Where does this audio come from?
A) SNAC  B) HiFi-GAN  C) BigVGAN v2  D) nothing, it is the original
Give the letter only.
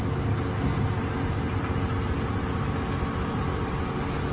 D